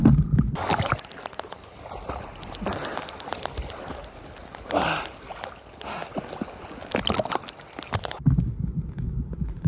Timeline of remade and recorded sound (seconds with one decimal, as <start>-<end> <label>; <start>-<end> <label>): 0.0-9.7 recorded